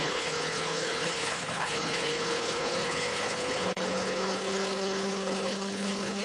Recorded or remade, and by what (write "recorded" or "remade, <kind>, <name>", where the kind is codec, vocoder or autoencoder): remade, codec, HILCodec